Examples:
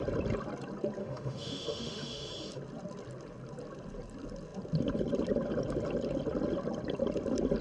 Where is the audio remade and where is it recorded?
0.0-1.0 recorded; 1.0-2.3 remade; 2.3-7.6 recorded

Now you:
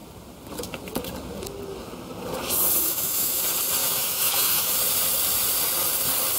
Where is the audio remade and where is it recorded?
0.0-2.8 recorded; 2.8-3.4 remade; 3.4-3.8 recorded; 3.8-4.7 remade; 4.7-6.4 recorded